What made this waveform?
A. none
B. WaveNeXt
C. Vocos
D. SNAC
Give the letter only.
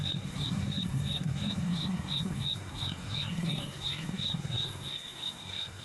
D